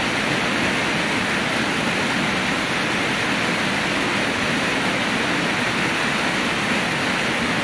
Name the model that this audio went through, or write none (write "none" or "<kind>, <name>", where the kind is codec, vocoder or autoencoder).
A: none